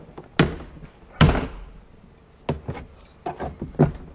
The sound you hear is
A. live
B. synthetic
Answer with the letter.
A